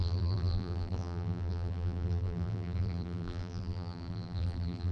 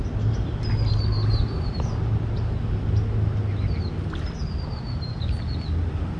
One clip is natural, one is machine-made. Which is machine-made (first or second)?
first